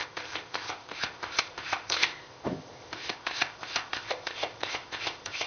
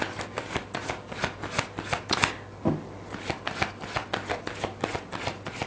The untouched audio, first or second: second